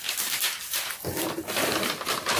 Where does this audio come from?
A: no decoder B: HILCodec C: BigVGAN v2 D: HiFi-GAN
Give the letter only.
C